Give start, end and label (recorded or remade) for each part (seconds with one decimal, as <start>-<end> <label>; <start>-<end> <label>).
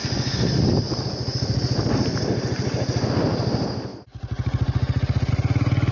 0.0-5.9 recorded